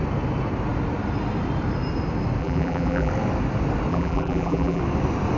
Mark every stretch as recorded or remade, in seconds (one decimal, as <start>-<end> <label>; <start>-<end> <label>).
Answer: 0.0-2.4 recorded; 2.4-3.1 remade; 3.1-3.9 recorded; 3.9-4.8 remade; 4.8-5.4 recorded